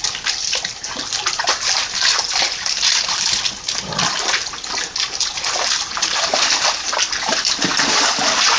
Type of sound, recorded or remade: recorded